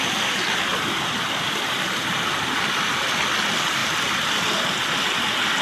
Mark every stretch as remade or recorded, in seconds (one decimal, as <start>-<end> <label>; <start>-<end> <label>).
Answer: 0.0-0.7 recorded; 0.7-2.0 remade; 2.0-5.6 recorded